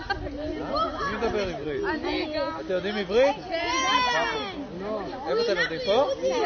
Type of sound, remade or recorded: recorded